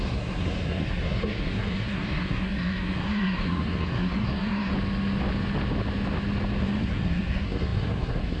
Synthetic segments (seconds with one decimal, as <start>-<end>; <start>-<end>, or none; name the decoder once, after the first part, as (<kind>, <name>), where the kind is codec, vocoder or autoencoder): 0.0-4.7 (codec, SNAC); 6.6-8.4